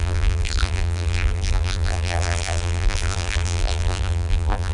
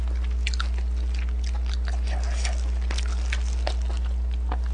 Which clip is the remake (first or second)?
first